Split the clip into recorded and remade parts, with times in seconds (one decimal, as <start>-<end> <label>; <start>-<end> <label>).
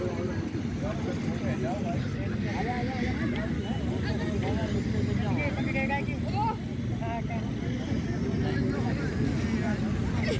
0.0-10.4 recorded